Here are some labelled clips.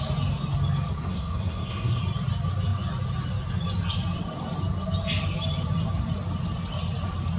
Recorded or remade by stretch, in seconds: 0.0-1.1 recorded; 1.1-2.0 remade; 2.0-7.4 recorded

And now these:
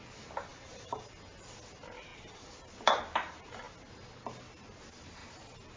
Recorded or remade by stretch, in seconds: 0.0-5.8 recorded

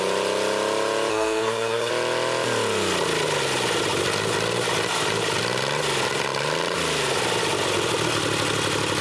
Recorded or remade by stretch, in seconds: 0.0-1.1 recorded; 1.1-1.9 remade; 1.9-9.0 recorded

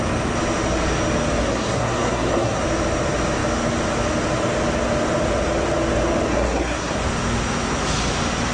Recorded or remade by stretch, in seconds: 0.0-1.4 recorded; 1.4-2.6 remade; 2.6-6.3 recorded; 6.3-7.0 remade; 7.0-8.5 recorded

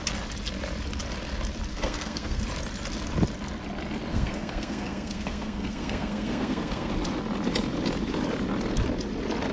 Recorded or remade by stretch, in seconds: 0.0-1.7 recorded; 1.7-2.4 remade; 2.4-4.1 recorded; 4.1-6.9 remade; 6.9-9.5 recorded

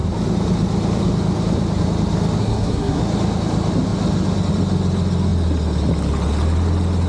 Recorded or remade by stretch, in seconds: 0.0-2.4 recorded; 2.4-3.0 remade; 3.0-7.1 recorded

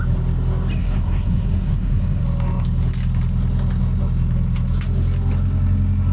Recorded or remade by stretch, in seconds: 0.0-0.8 recorded; 0.8-2.2 remade; 2.2-6.1 recorded